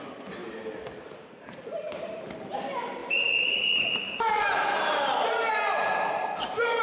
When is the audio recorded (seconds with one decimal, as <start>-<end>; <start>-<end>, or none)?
0.0-0.4; 2.2-3.0